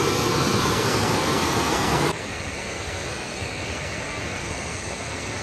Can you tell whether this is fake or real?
fake